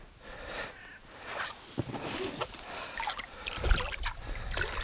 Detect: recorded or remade recorded